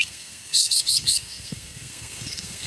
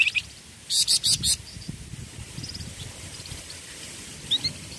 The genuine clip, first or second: second